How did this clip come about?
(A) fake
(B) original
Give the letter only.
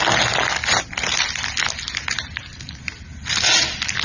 B